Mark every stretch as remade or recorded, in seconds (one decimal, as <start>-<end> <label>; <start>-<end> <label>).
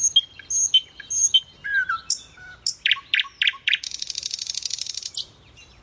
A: 0.0-3.5 recorded; 3.5-5.8 remade